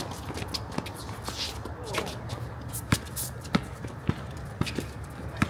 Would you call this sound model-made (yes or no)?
no